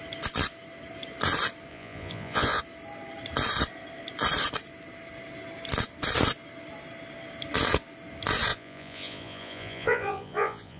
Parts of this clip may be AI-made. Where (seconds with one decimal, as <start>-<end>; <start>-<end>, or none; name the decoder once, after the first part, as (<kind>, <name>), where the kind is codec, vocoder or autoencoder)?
1.7-2.6 (vocoder, Vocos); 8.5-10.8